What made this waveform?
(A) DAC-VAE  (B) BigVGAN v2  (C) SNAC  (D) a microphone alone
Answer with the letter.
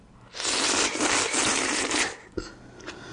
D